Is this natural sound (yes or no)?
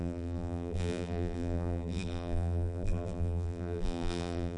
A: no